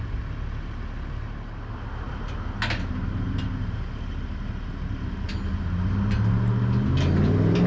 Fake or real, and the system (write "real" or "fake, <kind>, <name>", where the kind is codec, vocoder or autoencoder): real